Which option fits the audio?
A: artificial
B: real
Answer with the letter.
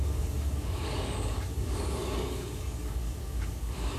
A